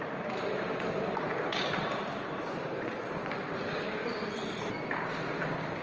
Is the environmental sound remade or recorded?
remade